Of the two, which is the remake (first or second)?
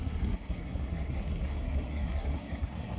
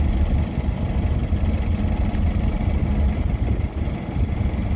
first